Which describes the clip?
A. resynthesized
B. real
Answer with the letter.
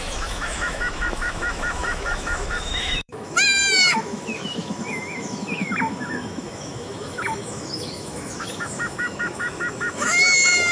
A